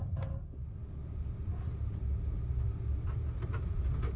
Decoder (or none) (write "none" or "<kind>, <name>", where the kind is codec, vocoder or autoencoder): none